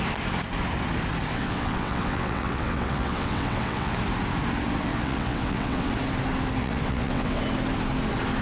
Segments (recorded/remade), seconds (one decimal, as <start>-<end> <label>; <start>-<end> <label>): 0.0-1.3 recorded; 1.3-3.9 remade; 3.9-4.9 recorded; 4.9-5.9 remade; 5.9-6.6 recorded; 6.6-7.4 remade; 7.4-8.4 recorded